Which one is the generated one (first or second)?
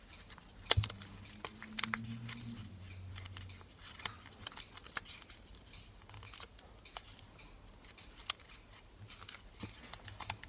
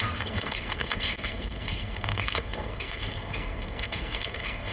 second